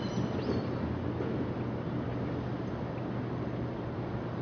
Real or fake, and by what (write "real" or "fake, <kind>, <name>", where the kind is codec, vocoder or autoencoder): real